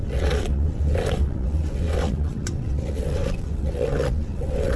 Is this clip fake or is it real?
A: fake